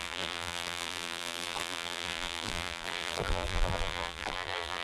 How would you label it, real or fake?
fake